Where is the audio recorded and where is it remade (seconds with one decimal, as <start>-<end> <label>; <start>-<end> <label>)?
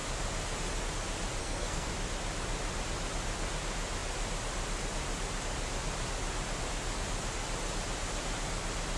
0.0-1.4 recorded; 1.4-1.9 remade; 1.9-9.0 recorded